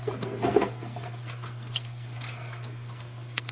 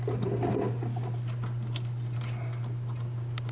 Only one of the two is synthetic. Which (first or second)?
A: first